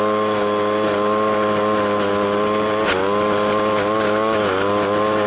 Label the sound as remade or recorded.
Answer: recorded